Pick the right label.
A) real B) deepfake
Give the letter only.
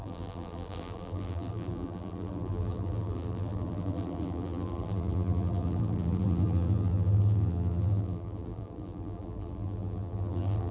B